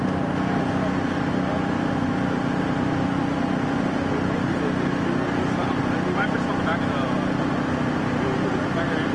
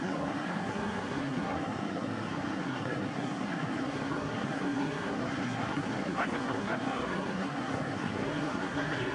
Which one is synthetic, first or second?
second